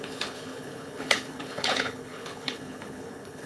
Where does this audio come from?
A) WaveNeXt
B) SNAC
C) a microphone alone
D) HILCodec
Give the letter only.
D